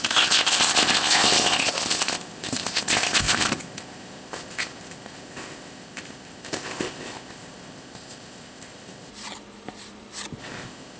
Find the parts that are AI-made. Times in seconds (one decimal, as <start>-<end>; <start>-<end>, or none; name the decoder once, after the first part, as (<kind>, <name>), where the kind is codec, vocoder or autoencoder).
0.0-9.1 (codec, ZipCodec); 10.4-11.0